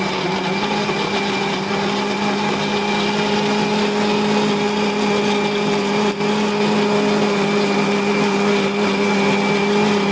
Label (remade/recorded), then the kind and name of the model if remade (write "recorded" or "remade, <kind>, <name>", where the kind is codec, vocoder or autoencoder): recorded